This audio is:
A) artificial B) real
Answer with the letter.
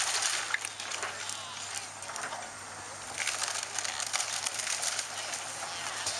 B